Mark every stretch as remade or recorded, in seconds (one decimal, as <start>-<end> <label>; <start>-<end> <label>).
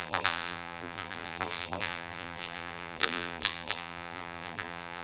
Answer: 0.0-5.0 remade